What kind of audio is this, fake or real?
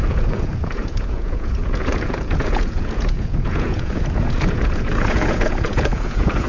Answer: fake